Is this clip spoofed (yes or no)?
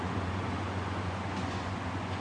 yes